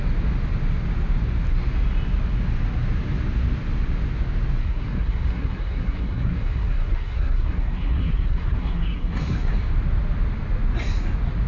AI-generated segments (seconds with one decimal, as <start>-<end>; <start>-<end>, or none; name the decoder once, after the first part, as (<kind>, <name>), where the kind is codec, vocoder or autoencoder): 4.6-9.5 (codec, SNAC)